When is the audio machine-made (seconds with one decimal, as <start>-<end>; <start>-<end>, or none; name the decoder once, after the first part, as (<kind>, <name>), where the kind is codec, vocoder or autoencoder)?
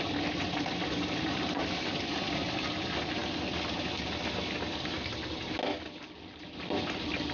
none